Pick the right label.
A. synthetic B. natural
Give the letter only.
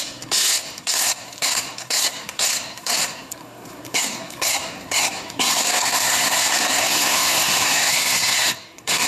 A